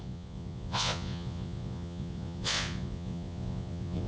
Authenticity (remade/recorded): remade